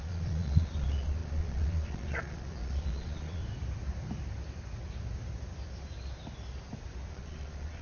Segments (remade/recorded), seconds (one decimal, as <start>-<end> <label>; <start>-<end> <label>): 0.0-3.4 remade; 3.4-7.1 recorded; 7.1-7.8 remade